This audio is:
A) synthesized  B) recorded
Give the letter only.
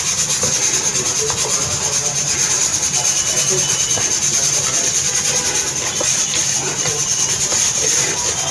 B